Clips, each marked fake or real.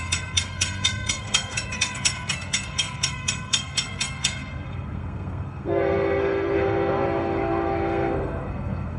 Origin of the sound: fake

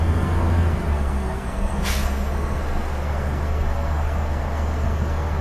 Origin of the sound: fake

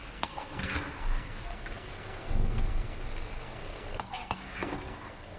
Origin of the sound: fake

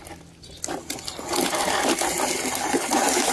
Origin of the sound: real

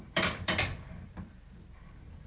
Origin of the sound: fake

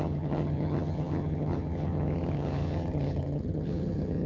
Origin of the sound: fake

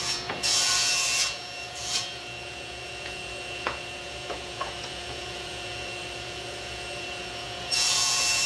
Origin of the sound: fake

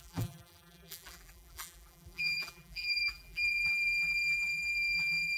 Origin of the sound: fake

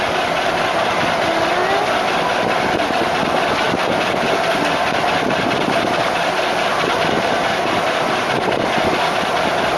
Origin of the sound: real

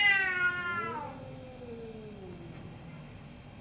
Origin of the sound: real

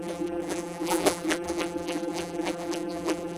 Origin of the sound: fake